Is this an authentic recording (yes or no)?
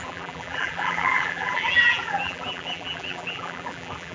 no